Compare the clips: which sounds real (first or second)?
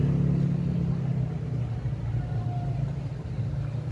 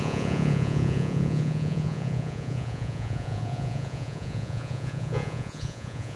first